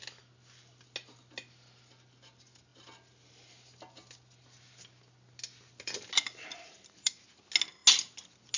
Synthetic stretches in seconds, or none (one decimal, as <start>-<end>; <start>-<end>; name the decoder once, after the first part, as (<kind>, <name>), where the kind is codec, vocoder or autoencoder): none